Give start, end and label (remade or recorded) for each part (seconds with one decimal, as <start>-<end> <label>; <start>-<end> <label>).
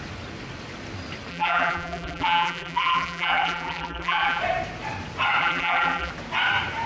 0.0-1.3 recorded; 1.3-4.4 remade; 4.4-5.4 recorded; 5.4-6.1 remade; 6.1-6.9 recorded